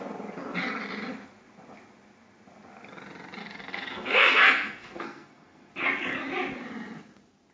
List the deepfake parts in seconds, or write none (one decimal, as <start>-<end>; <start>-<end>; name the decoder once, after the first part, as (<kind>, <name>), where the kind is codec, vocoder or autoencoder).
3.4-5.7 (codec, SNAC)